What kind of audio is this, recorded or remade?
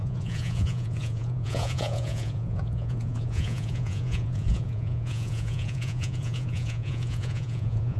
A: remade